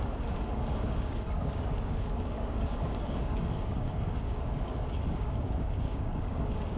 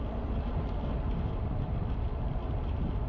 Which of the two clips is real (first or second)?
second